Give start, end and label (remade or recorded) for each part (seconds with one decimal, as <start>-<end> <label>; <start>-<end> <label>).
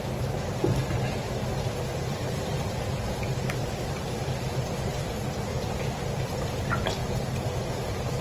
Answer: 0.0-1.4 recorded; 1.4-4.9 remade; 4.9-7.0 recorded; 7.0-7.6 remade; 7.6-8.2 recorded